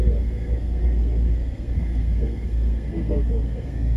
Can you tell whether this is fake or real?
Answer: fake